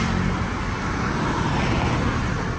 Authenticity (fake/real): real